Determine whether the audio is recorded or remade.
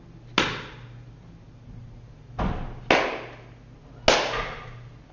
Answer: recorded